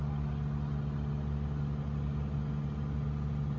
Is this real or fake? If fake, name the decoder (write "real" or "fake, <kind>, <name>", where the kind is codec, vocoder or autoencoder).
real